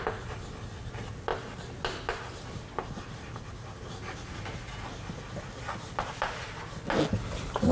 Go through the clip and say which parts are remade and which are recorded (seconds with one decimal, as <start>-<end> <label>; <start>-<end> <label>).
0.0-7.7 recorded